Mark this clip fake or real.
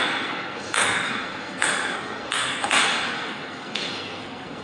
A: fake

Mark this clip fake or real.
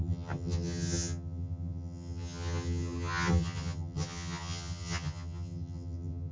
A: fake